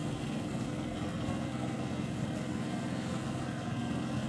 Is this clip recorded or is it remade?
remade